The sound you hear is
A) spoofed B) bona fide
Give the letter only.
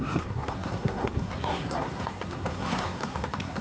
A